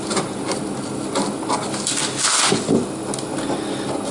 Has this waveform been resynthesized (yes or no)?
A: no